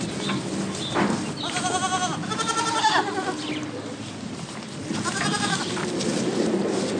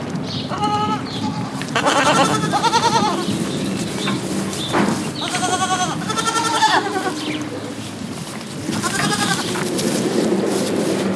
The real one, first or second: first